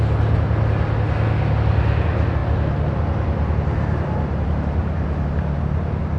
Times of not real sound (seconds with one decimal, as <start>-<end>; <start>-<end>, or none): none